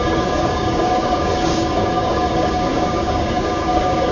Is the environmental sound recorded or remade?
remade